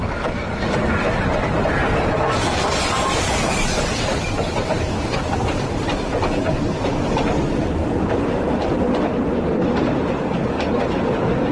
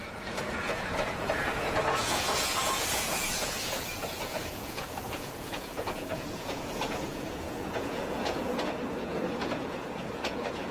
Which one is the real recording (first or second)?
first